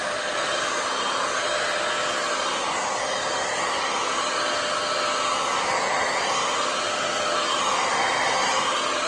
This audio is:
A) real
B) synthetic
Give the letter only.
A